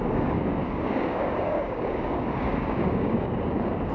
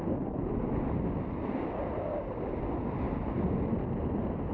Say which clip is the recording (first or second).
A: second